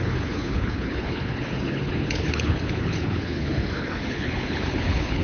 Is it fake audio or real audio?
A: fake